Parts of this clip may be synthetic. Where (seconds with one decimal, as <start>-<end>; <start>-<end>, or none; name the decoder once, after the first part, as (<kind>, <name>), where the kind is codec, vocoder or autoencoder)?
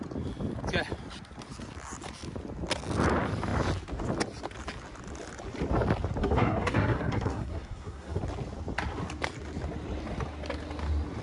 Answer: 6.2-8.2 (codec, SNAC)